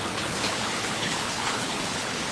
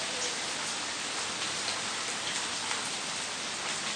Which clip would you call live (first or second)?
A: second